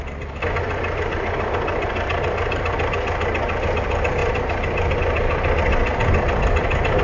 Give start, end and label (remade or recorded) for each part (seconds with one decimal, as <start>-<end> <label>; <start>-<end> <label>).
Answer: 0.0-7.0 recorded